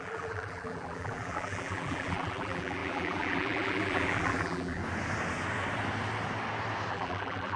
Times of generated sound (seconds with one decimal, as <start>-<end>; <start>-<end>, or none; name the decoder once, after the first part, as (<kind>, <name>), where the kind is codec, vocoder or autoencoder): 0.0-4.8 (vocoder, BigVGAN v2); 6.9-7.6